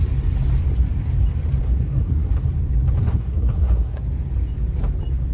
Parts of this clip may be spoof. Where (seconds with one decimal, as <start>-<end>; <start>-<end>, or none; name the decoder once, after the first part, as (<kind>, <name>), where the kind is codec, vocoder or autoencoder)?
1.6-2.3 (codec, SNAC); 3.0-4.0